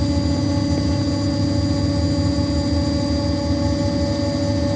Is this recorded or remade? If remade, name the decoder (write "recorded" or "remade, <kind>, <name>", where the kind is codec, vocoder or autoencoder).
recorded